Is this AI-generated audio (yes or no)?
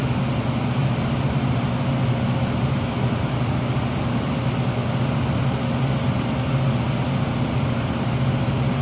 no